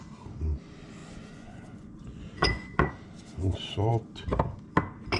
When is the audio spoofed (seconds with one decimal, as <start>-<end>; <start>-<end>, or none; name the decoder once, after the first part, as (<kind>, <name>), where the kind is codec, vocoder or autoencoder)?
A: 1.0-2.9 (vocoder, Vocos)